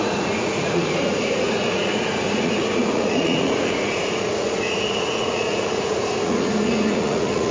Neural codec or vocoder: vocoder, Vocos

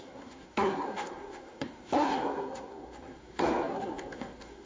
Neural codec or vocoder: codec, SNAC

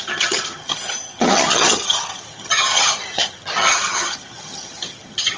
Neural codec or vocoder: vocoder, HiFi-GAN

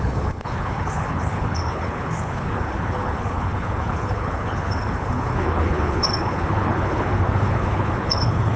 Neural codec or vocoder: codec, HILCodec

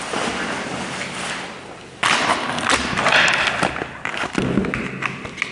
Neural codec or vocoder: none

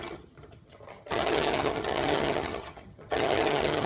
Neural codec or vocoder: vocoder, HiFi-GAN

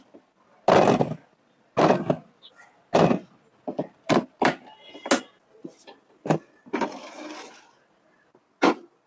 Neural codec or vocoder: none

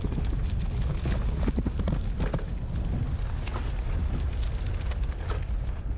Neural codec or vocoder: none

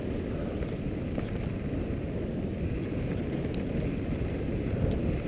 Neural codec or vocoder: vocoder, BigVGAN v2